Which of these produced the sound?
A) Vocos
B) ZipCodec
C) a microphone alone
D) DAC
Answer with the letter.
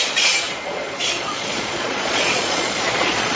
A